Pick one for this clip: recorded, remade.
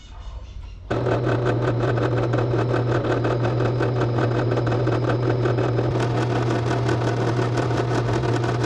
recorded